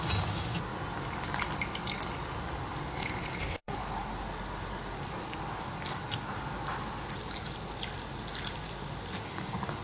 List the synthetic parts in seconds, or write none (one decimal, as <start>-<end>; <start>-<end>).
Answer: 2.8-3.8